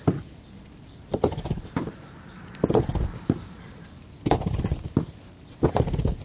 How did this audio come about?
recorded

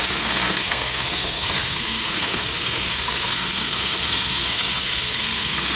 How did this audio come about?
remade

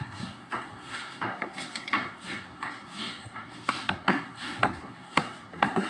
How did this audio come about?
remade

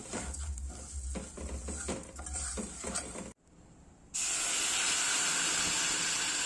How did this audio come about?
recorded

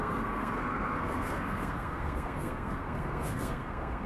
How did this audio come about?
remade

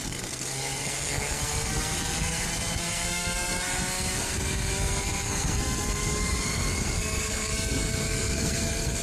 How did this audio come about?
remade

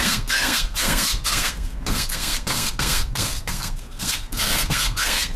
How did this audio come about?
remade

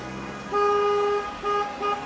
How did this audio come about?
recorded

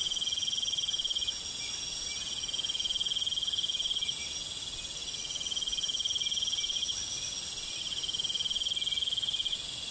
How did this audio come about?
recorded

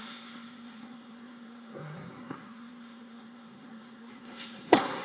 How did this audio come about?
remade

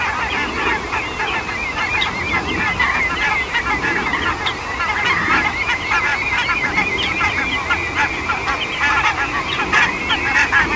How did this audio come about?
recorded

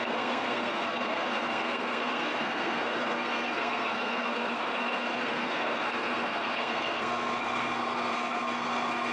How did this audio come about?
remade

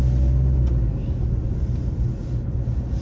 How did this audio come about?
recorded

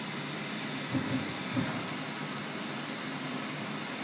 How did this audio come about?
recorded